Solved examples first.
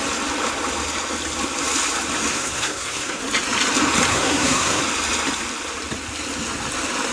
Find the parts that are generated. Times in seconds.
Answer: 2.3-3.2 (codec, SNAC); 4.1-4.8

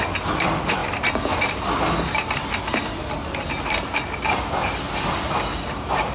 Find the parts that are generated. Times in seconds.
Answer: none

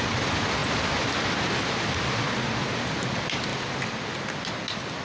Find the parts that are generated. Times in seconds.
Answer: none

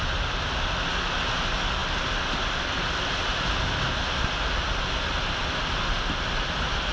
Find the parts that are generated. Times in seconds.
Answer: none

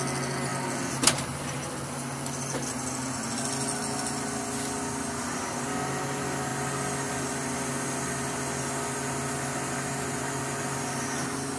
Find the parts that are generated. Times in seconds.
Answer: none

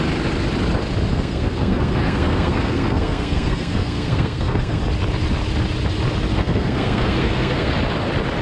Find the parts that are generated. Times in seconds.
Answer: 1.1-4.8 (codec, SNAC); 6.3-7.7